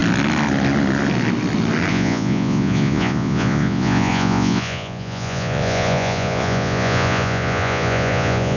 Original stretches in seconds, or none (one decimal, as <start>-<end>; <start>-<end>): 0.0-1.9